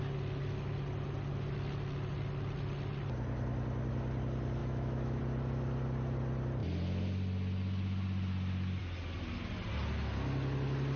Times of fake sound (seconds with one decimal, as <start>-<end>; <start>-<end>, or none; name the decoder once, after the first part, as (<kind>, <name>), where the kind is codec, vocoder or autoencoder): 4.6-5.2 (autoencoder, DAC-VAE)